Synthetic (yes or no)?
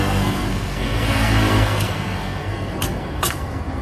yes